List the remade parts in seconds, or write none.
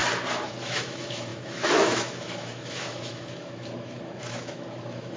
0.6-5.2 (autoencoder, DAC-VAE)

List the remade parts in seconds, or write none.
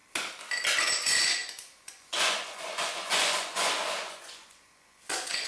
0.8-5.5 (vocoder, Vocos)